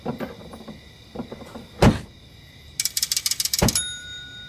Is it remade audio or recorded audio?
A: recorded